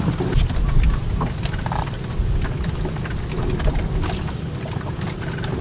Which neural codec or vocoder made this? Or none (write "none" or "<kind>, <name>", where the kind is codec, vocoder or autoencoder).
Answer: none